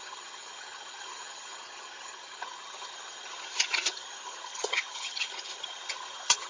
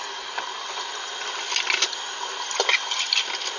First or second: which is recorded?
second